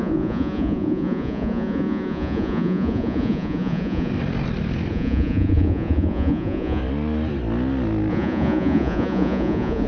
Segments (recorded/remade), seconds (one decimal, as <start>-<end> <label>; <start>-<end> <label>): 0.0-4.1 remade; 4.1-4.9 recorded; 4.9-6.8 remade; 6.8-8.1 recorded; 8.1-9.9 remade